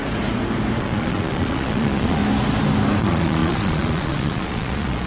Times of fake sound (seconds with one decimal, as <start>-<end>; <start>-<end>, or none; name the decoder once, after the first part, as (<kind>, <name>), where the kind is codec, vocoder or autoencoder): 0.8-2.2 (vocoder, Vocos); 3.0-5.1